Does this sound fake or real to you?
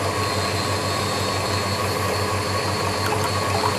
real